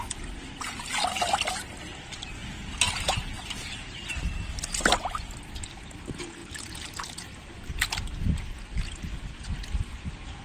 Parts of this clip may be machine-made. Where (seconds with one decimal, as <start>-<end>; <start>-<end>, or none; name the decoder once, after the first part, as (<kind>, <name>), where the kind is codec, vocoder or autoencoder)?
none

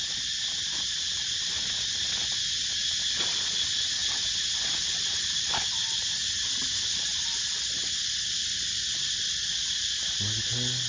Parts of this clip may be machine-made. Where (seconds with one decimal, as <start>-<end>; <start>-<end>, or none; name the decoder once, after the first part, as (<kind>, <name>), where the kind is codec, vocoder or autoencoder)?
4.0-5.6 (vocoder, BigVGAN v2)

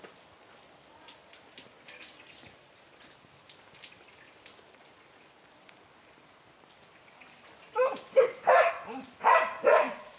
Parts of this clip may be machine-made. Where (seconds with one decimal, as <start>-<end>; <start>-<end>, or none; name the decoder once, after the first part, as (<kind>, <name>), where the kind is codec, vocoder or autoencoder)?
9.7-10.2 (vocoder, Vocos)

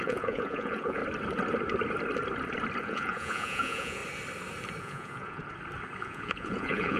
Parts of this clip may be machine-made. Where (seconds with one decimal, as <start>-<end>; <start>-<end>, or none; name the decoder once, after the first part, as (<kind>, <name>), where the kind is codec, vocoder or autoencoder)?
0.0-1.0 (vocoder, Vocos); 2.8-4.0; 4.8-5.4; 6.0-7.0